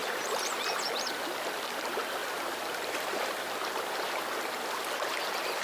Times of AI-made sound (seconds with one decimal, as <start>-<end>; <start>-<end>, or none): 0.0-0.6; 2.2-4.2